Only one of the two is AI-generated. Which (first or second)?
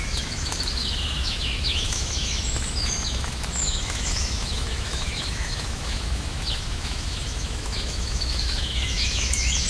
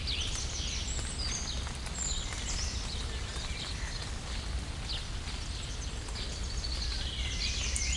first